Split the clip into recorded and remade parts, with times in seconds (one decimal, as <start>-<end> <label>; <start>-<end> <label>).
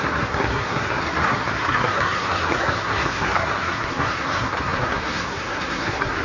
0.0-6.2 remade